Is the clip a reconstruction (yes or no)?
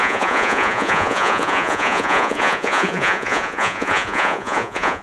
yes